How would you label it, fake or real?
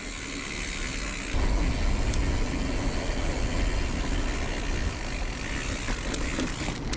real